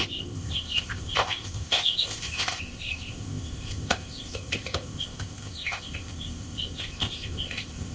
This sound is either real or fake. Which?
fake